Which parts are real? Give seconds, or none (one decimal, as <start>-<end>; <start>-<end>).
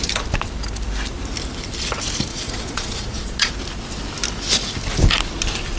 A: 0.0-2.3; 3.5-5.8